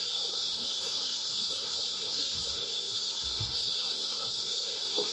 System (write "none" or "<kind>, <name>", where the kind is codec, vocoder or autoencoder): codec, SNAC